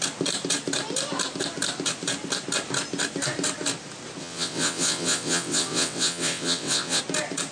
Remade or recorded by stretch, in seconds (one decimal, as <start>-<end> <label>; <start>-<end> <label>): 0.0-4.2 recorded; 4.2-7.0 remade; 7.0-7.5 recorded